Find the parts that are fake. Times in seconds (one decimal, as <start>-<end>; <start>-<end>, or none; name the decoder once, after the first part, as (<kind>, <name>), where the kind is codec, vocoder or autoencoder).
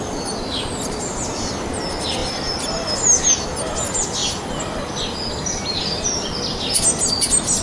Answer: none